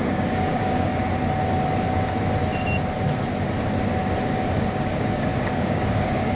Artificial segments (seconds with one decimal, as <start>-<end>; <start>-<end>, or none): 0.0-0.9; 4.3-6.4